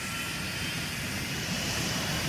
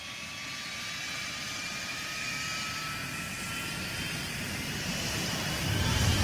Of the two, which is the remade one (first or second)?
first